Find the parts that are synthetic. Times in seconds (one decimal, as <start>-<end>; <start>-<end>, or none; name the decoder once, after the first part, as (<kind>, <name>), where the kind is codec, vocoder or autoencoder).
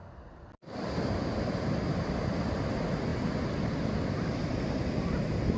none